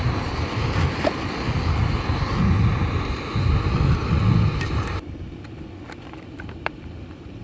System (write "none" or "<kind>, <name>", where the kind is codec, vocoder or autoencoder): none